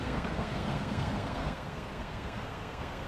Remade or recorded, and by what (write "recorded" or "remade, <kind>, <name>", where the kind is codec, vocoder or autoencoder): remade, codec, SNAC